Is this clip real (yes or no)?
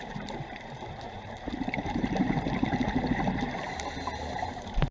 no